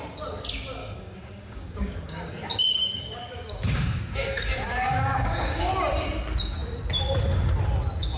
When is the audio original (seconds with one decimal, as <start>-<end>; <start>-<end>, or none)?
0.0-0.8; 2.3-2.7; 5.7-8.2